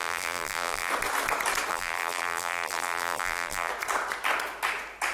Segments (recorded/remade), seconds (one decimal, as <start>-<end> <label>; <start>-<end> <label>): 0.0-0.9 remade; 0.9-1.7 recorded; 1.7-3.7 remade; 3.7-5.1 recorded